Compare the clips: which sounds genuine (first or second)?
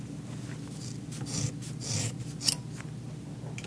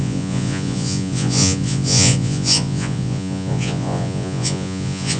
first